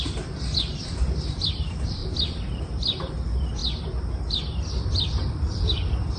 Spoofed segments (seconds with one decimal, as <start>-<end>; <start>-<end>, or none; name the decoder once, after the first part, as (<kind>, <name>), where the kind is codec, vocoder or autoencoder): 0.0-3.6 (vocoder, BigVGAN v2); 4.3-6.2

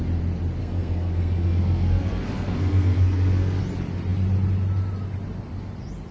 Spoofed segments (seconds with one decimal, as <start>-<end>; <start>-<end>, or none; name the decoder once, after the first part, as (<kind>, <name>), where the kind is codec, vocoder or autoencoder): 0.6-3.6 (codec, SNAC)

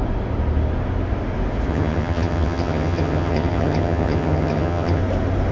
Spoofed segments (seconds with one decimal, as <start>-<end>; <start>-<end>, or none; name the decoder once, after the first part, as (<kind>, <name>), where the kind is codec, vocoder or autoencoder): 1.7-5.0 (vocoder, HiFi-GAN)

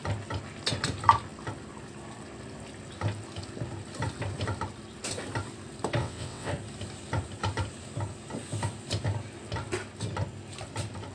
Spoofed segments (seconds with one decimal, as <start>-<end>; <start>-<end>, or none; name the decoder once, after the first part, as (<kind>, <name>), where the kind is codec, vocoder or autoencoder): 6.0-6.5 (vocoder, WaveNeXt)

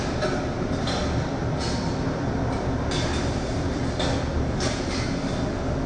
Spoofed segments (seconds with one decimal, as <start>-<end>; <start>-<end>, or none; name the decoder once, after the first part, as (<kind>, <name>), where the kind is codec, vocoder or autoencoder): 1.0-3.8 (vocoder, BigVGAN v2)